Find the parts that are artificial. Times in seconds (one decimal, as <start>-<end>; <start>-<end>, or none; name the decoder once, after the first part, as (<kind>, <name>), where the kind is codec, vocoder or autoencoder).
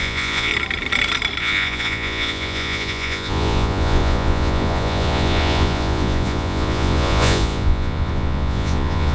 0.0-0.5 (vocoder, Vocos); 1.4-9.1